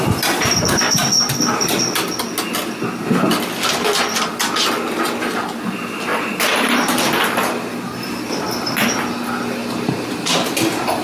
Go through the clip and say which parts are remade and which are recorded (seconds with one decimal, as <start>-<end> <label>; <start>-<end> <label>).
0.0-6.1 recorded; 6.1-7.5 remade; 7.5-9.6 recorded; 9.6-10.2 remade; 10.2-11.0 recorded

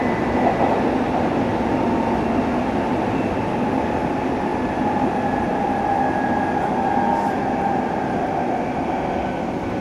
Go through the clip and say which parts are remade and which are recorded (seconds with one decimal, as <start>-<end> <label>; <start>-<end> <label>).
0.0-9.8 recorded

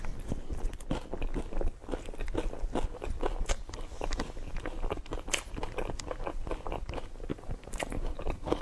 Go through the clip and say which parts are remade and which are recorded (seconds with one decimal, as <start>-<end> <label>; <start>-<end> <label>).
0.0-7.3 recorded; 7.3-8.6 remade